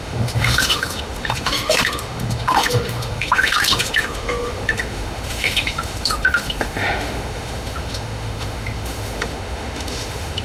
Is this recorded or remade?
remade